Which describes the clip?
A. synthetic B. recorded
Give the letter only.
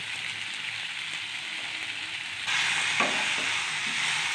B